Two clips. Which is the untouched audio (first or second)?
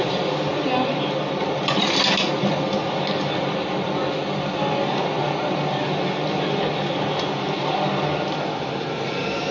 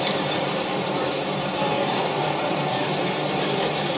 first